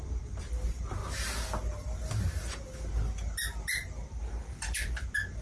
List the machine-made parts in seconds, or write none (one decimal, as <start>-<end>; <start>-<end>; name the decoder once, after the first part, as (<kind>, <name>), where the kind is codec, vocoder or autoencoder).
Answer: none

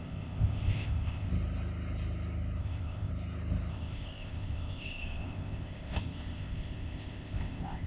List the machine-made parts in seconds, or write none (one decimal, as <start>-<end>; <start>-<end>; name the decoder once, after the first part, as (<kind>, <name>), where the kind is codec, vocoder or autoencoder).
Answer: 0.0-1.3 (codec, ZipCodec); 2.6-3.1; 3.7-7.9

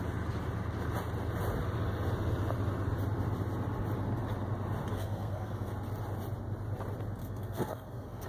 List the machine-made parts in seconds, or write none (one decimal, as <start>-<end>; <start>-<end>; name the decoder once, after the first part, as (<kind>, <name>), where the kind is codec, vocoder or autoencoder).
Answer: 4.9-5.7 (codec, SNAC); 7.2-8.3

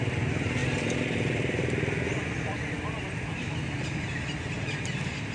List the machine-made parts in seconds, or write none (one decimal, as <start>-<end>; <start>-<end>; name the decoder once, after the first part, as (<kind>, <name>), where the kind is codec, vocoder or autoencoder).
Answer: none

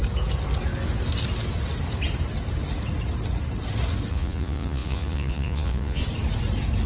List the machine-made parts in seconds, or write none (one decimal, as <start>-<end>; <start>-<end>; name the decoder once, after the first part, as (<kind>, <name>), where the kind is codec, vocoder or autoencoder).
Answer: 4.1-6.0 (vocoder, Vocos)

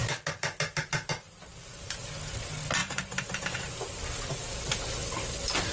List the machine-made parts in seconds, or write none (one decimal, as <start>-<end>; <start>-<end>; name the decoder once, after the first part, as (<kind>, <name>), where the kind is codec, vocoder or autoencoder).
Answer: 2.8-3.6 (vocoder, Vocos)

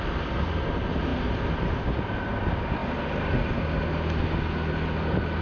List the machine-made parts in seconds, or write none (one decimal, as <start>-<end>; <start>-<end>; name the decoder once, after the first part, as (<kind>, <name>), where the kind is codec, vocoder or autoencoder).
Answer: none